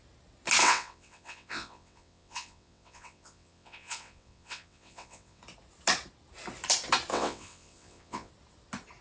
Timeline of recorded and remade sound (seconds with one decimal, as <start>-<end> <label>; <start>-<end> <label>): 0.0-0.6 recorded; 0.6-5.4 remade; 5.4-7.1 recorded; 7.1-8.3 remade; 8.3-9.0 recorded